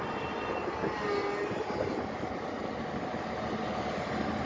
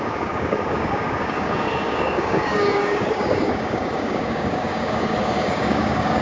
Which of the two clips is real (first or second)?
first